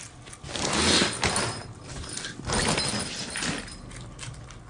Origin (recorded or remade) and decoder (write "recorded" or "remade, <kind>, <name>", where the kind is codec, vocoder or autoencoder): recorded